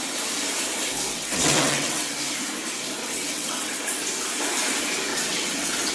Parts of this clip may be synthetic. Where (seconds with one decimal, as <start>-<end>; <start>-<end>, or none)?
1.1-2.2; 3.0-3.8; 5.1-5.9